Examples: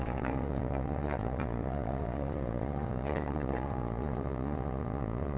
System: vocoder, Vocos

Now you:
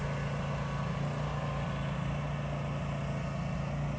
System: none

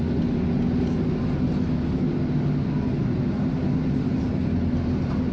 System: none